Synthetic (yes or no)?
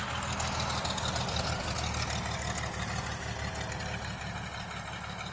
no